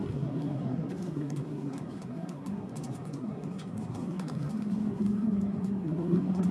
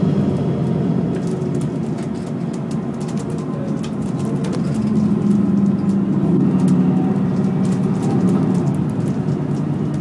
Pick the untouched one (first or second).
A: second